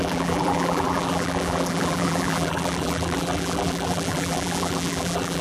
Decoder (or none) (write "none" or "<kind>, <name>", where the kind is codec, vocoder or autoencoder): vocoder, BigVGAN v2